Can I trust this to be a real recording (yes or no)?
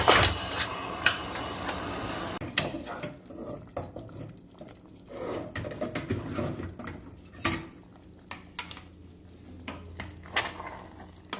yes